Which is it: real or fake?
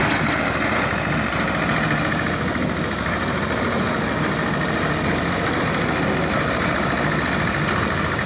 real